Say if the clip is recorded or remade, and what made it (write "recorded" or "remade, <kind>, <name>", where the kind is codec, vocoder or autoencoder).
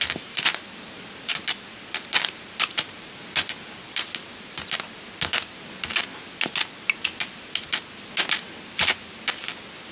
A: recorded